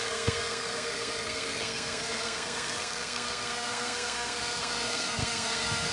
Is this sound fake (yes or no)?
yes